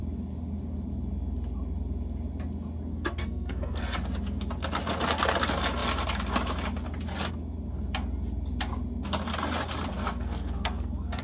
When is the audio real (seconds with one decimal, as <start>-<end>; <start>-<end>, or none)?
0.0-2.9; 3.8-9.9